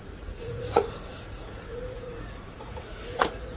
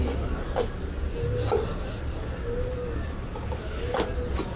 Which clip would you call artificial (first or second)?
first